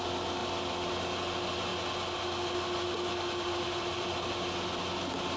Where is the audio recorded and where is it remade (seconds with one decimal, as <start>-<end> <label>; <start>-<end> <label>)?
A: 0.0-5.4 recorded